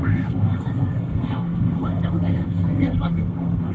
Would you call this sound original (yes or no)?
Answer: no